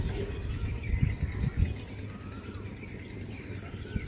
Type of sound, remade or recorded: recorded